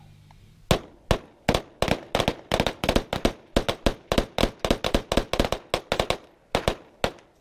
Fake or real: real